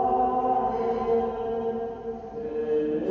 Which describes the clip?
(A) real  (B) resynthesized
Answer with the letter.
A